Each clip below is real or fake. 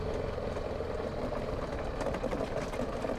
real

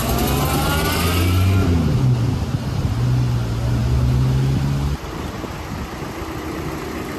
real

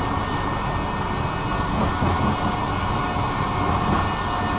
real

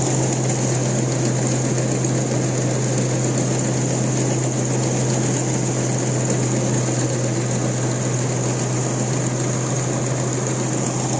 real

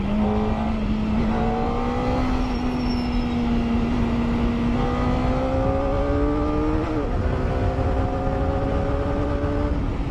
real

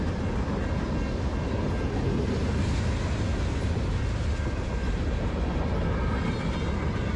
real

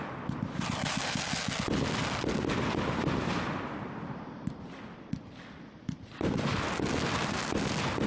real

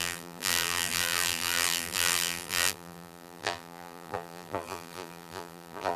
fake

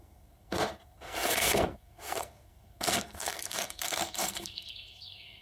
fake